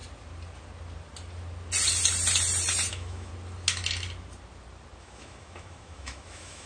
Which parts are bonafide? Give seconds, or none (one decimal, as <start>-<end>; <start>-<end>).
0.0-2.9; 3.3-5.0